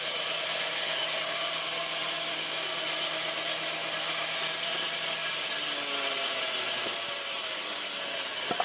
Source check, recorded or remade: recorded